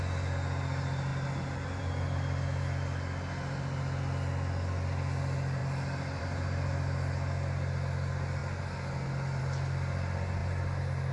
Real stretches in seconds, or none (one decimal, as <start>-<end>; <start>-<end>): 0.0-11.1